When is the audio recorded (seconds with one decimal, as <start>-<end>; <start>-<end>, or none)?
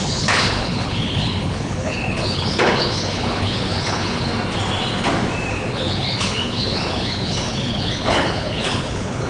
4.3-5.5